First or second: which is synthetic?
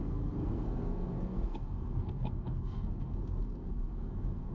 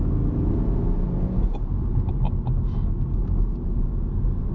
first